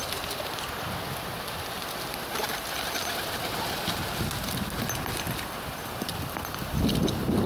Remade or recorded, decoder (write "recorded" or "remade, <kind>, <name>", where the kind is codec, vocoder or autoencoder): recorded